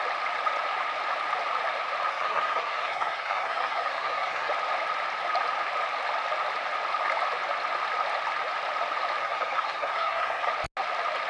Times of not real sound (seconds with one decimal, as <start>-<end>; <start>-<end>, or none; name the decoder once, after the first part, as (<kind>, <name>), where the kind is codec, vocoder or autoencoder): 2.1-4.5 (codec, SNAC); 9.2-10.5